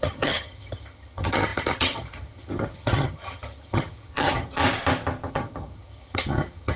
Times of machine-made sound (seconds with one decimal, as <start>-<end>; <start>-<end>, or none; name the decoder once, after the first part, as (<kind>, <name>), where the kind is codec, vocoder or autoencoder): 0.0-4.6 (vocoder, HiFi-GAN); 5.3-6.8